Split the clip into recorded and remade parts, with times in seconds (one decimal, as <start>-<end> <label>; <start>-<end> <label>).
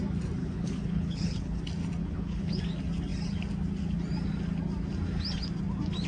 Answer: 0.0-0.4 recorded; 0.4-1.6 remade; 1.6-2.0 recorded; 2.0-2.6 remade; 2.6-6.1 recorded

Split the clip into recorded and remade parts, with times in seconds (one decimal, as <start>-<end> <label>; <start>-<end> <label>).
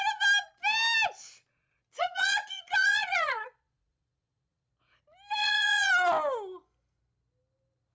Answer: 0.0-1.6 recorded; 1.6-4.7 remade; 4.7-5.4 recorded; 5.4-5.9 remade; 5.9-7.9 recorded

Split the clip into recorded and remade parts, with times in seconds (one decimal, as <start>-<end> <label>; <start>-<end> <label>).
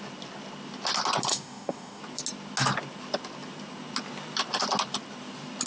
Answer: 0.0-1.3 recorded; 1.3-2.0 remade; 2.0-5.7 recorded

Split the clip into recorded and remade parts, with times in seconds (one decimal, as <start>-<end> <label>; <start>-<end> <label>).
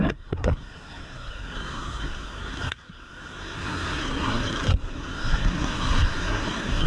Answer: 0.0-6.9 remade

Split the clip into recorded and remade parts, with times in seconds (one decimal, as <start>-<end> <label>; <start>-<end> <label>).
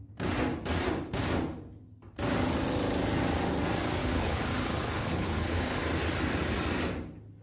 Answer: 0.0-4.0 recorded; 4.0-5.8 remade; 5.8-7.4 recorded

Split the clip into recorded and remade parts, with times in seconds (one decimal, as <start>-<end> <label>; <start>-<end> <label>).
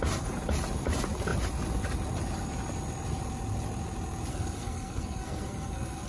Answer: 0.0-4.3 recorded; 4.3-6.1 remade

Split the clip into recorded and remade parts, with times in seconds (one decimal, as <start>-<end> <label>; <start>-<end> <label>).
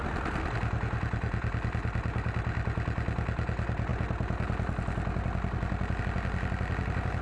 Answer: 0.0-7.2 recorded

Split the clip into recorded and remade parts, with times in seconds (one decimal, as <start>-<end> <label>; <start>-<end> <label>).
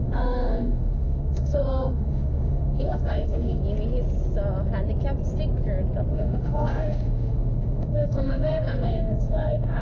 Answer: 0.0-3.6 remade; 3.6-6.1 recorded; 6.1-9.8 remade